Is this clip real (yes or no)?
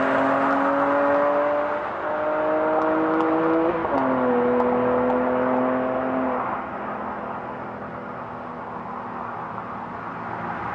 yes